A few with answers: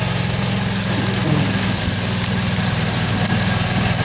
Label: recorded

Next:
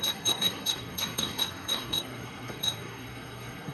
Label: remade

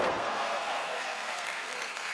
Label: remade